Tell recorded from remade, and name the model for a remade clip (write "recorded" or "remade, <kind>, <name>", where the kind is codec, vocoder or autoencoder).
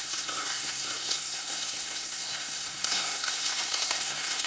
remade, codec, SNAC